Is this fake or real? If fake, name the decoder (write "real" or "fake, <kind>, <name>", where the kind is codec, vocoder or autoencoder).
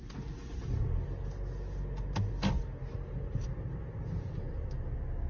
real